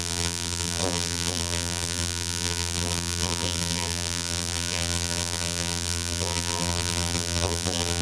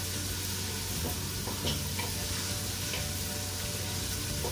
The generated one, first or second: first